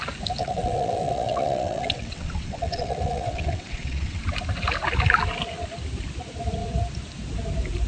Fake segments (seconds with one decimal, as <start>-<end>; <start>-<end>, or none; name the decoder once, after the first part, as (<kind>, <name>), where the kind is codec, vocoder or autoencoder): 0.4-4.2 (vocoder, WaveNeXt)